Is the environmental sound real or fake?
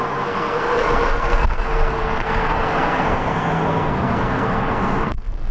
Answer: fake